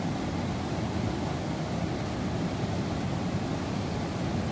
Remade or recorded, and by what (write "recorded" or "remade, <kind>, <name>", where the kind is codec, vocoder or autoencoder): recorded